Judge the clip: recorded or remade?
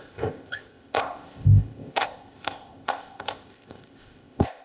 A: remade